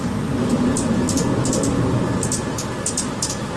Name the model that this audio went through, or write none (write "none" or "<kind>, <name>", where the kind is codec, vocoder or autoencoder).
none